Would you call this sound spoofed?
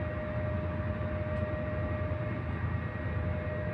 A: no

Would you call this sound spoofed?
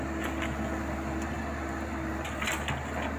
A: no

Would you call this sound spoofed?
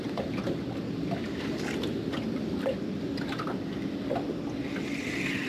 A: no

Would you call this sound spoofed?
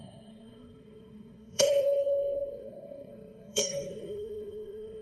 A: yes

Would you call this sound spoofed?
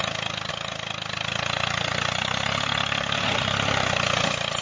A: no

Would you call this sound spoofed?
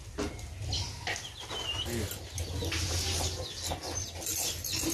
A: no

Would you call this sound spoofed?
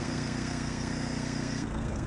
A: yes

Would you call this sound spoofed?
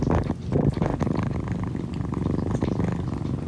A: no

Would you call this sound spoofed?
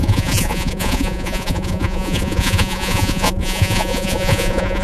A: yes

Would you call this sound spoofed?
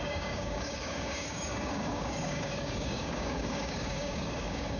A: yes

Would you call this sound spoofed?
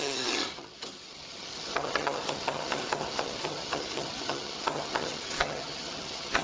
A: yes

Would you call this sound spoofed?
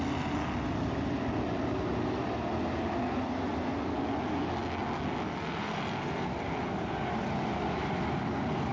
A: no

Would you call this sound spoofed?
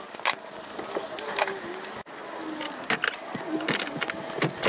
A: no